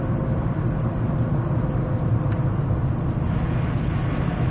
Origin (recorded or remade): recorded